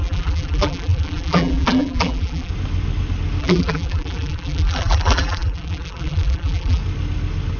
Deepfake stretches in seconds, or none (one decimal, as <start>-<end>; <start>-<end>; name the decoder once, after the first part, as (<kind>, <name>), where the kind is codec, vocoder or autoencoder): 0.0-2.5 (vocoder, BigVGAN v2); 3.4-6.8